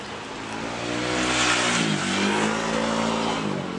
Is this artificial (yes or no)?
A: no